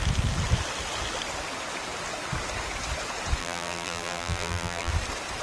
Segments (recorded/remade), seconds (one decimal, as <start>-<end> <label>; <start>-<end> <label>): 0.0-3.4 recorded; 3.4-4.9 remade; 4.9-5.4 recorded